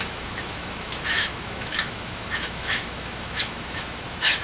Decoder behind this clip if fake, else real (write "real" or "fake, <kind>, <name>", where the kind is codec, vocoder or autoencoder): fake, autoencoder, DAC-VAE